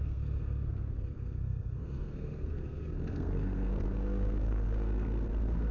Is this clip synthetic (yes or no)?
yes